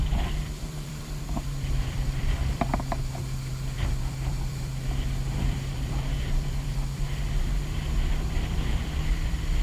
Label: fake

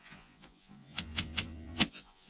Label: fake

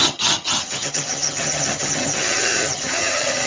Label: fake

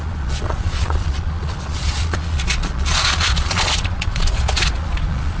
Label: fake